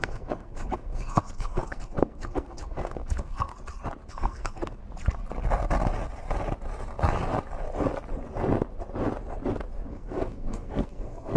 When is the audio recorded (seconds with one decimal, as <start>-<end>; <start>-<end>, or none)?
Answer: 3.5-4.1; 4.8-9.9